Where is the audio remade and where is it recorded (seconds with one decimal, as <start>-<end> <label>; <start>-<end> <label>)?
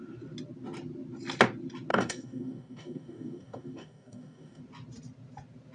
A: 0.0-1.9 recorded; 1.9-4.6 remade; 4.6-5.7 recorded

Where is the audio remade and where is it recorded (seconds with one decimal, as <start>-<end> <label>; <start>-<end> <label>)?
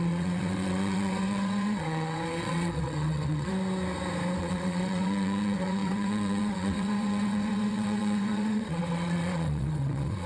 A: 0.0-3.5 remade; 3.5-4.4 recorded; 4.4-10.3 remade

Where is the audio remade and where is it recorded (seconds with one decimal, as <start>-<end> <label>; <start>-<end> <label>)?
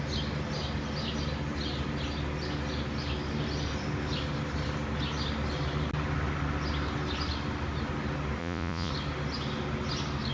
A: 0.0-8.4 recorded; 8.4-8.9 remade; 8.9-10.3 recorded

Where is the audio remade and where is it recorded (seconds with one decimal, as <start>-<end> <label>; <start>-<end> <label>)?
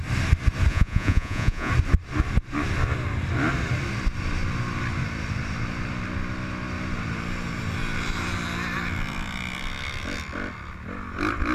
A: 0.0-0.7 recorded; 0.7-1.7 remade; 1.7-11.5 recorded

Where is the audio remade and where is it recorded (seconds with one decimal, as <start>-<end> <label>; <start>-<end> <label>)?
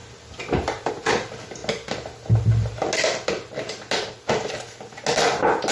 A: 0.0-5.7 recorded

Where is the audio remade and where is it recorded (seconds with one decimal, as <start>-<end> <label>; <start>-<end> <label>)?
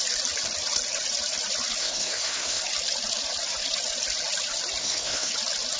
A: 0.0-1.8 recorded; 1.8-2.6 remade; 2.6-4.8 recorded; 4.8-5.3 remade; 5.3-5.8 recorded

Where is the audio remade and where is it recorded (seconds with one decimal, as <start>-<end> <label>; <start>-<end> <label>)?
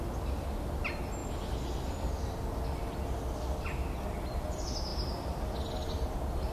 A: 0.0-6.5 recorded